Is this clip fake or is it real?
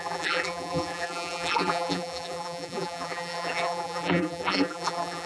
fake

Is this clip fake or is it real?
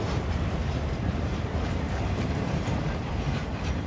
fake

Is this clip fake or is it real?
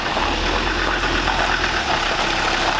real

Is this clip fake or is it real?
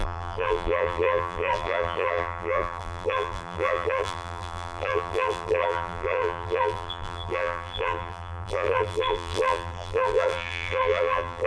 fake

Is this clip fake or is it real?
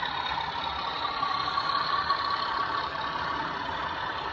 fake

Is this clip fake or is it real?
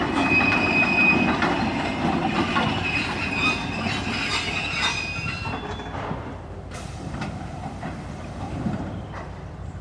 fake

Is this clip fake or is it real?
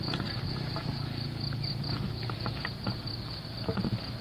real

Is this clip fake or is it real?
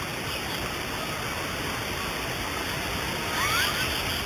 real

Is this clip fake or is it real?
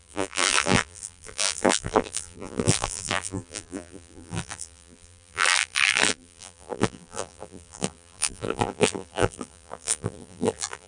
fake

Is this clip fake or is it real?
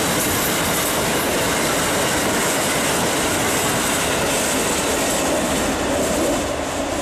real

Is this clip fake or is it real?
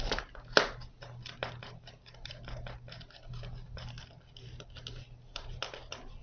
real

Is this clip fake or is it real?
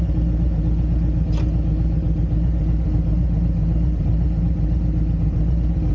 real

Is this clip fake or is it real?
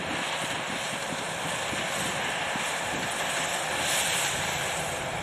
fake